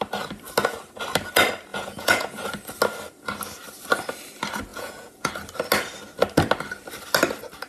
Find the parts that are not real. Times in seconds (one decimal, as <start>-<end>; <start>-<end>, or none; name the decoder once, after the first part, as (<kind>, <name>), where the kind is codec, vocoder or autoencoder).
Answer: 1.7-2.4 (vocoder, Vocos); 4.7-5.3